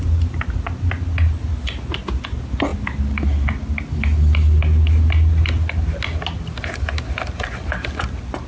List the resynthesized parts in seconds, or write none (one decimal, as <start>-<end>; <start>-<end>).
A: none